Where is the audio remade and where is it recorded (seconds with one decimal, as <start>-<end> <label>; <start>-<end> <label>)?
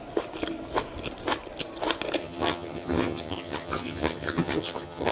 0.0-2.2 recorded; 2.2-5.1 remade